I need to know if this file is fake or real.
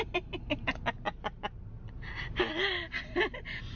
real